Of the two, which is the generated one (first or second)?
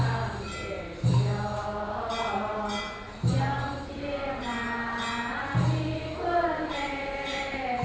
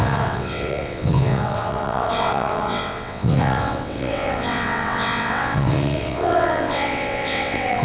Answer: second